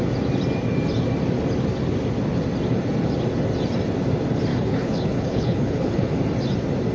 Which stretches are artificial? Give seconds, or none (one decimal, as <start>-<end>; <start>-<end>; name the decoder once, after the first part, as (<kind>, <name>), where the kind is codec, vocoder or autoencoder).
4.5-6.1 (codec, HILCodec)